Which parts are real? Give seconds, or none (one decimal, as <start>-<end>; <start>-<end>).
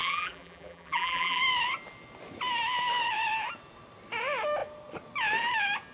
1.4-5.9